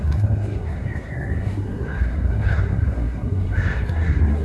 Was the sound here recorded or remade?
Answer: remade